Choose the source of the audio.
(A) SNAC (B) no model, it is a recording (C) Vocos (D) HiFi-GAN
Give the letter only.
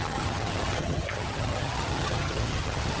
D